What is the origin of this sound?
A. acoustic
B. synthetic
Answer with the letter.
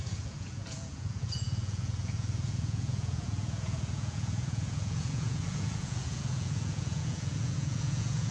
B